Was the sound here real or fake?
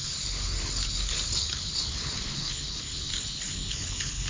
fake